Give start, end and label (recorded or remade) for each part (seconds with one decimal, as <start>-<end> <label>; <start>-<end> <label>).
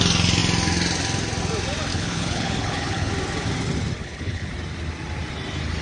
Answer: 0.0-1.9 recorded; 1.9-3.1 remade; 3.1-4.0 recorded; 4.0-4.5 remade; 4.5-5.8 recorded